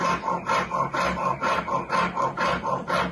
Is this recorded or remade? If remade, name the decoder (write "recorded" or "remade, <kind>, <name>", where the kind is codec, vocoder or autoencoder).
recorded